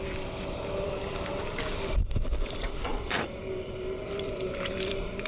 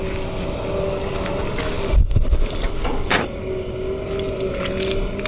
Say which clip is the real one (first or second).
second